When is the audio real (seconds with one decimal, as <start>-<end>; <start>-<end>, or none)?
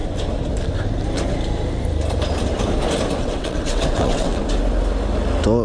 0.0-3.2; 4.4-5.6